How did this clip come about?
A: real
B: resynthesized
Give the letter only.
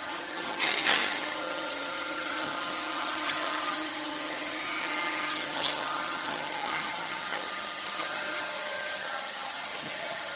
B